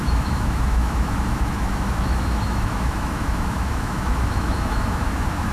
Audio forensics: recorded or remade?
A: remade